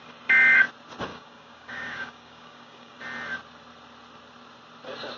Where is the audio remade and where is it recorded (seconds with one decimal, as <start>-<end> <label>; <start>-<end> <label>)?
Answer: 0.0-1.1 recorded; 1.1-3.0 remade; 3.0-5.2 recorded

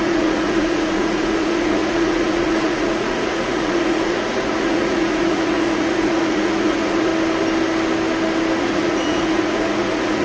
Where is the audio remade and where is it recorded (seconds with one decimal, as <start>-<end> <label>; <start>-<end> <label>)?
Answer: 0.0-7.1 remade; 7.1-8.6 recorded; 8.6-10.2 remade